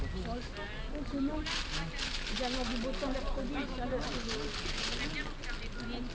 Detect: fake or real real